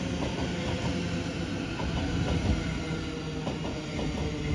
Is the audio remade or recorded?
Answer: recorded